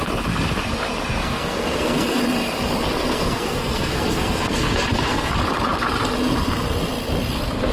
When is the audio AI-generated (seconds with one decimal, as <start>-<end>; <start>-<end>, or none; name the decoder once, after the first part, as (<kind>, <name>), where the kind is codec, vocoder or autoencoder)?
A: 1.2-2.2 (codec, SNAC); 3.0-5.3